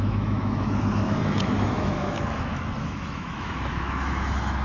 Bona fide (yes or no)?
no